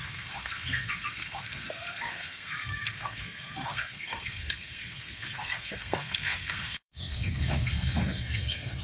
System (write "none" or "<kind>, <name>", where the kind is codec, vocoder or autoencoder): codec, SNAC